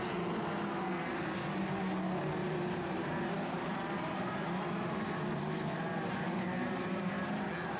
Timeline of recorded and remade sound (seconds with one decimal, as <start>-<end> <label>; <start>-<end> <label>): 0.0-2.4 recorded; 2.4-7.1 remade; 7.1-7.8 recorded